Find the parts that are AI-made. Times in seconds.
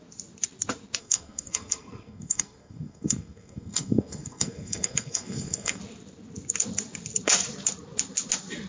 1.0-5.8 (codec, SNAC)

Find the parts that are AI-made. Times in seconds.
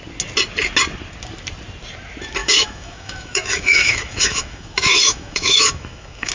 2.4-6.3 (autoencoder, DAC-VAE)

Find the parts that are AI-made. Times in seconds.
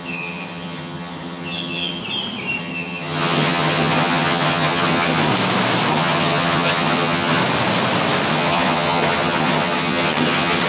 0.0-2.0 (vocoder, HiFi-GAN); 2.6-5.3; 5.9-7.4; 8.3-10.7